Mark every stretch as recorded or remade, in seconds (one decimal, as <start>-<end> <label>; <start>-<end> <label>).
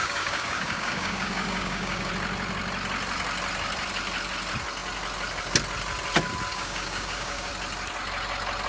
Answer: 0.0-2.1 remade; 2.1-6.5 recorded; 6.5-7.5 remade; 7.5-8.7 recorded